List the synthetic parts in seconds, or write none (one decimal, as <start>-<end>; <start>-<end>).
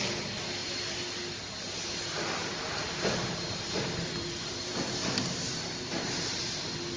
0.6-1.2; 2.4-6.6